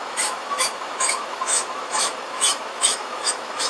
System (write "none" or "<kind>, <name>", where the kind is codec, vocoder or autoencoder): autoencoder, DAC-VAE